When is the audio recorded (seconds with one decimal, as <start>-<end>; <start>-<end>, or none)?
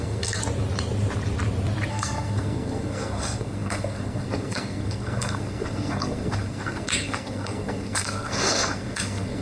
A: 0.4-1.9